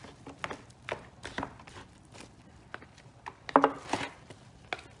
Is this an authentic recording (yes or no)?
yes